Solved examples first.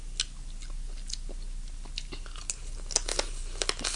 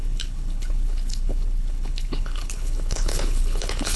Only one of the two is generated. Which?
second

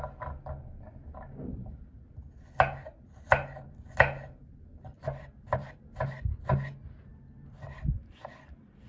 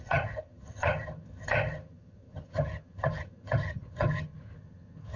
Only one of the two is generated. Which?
second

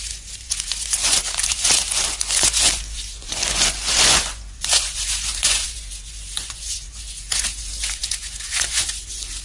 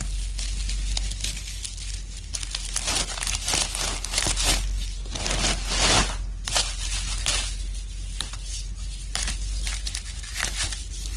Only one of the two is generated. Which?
first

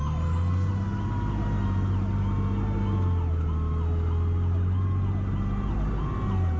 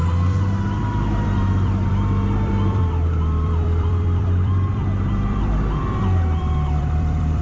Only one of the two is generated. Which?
second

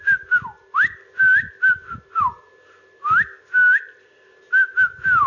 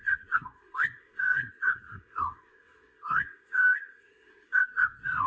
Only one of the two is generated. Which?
second